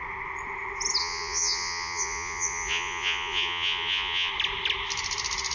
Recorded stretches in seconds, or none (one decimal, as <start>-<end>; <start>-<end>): 0.0-1.0; 4.3-5.5